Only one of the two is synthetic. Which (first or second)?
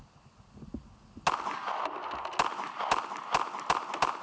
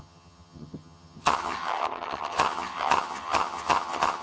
second